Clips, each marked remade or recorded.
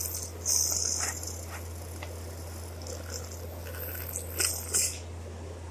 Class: recorded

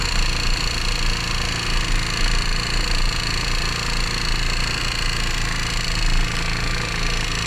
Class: recorded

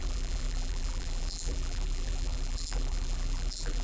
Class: remade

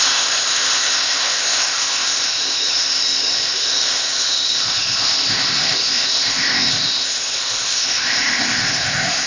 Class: remade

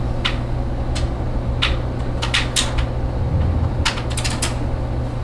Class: recorded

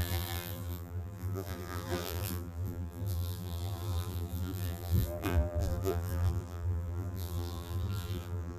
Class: remade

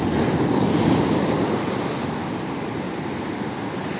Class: recorded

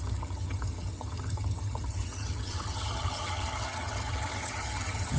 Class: remade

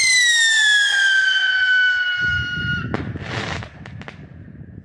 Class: recorded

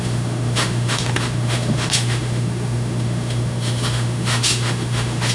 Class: remade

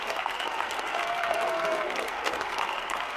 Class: remade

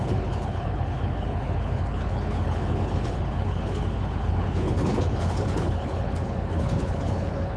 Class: remade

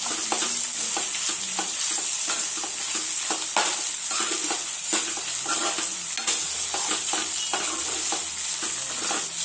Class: recorded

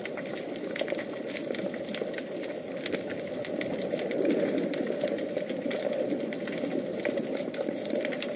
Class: recorded